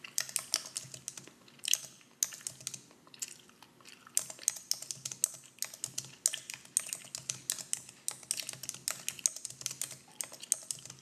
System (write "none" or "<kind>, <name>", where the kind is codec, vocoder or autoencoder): none